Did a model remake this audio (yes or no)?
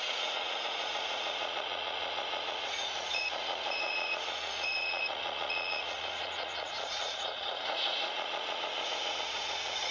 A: yes